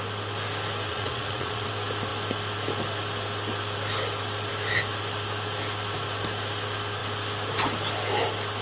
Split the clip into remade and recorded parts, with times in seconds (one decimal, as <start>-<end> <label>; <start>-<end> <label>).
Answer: 0.0-0.9 recorded; 0.9-1.7 remade; 1.7-8.6 recorded